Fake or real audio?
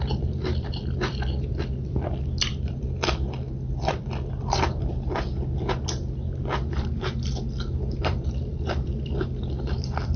fake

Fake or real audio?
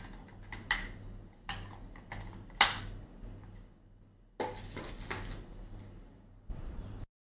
real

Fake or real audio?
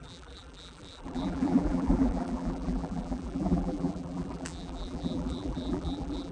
fake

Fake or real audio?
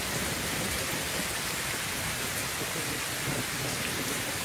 real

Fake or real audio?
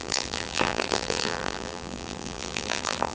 fake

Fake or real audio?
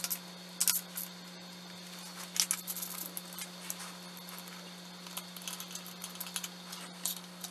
real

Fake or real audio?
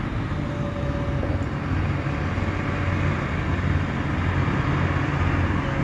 real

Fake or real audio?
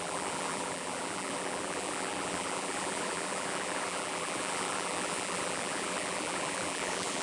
fake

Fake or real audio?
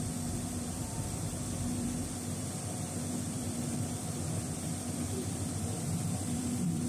fake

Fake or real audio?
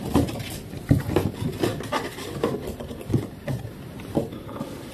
real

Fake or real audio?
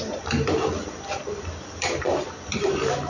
fake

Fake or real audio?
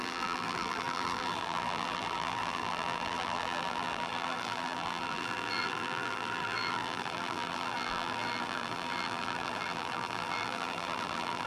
fake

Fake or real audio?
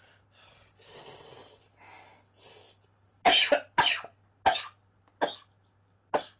real